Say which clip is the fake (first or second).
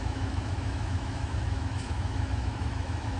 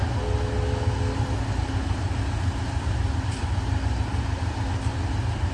first